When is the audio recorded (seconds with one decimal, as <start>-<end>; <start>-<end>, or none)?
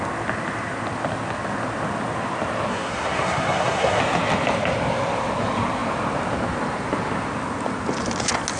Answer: 0.0-2.7; 4.0-8.6